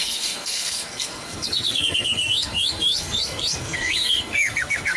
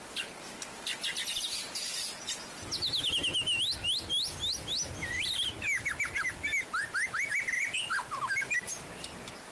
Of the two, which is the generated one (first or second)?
first